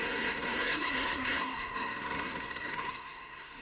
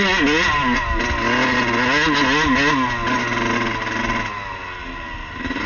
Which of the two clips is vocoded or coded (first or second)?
first